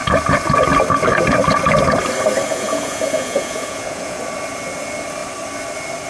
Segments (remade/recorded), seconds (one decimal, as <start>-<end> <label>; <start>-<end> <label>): 0.0-2.5 recorded; 2.5-4.2 remade; 4.2-6.1 recorded